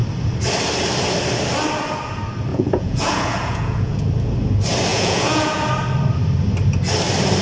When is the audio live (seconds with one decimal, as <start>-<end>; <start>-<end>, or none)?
0.0-2.5; 4.1-4.9; 5.6-7.4